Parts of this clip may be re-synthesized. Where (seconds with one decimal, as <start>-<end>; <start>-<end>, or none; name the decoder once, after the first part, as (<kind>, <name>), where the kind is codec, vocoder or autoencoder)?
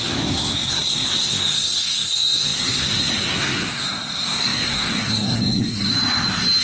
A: 0.0-5.9 (codec, SNAC)